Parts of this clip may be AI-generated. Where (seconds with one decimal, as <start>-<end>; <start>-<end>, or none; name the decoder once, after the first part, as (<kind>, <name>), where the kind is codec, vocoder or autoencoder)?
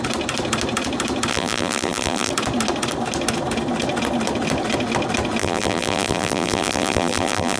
1.3-2.3 (vocoder, BigVGAN v2); 5.4-7.6